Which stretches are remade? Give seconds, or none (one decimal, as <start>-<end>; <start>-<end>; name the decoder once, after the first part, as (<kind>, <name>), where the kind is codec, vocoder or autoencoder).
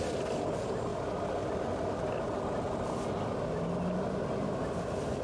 none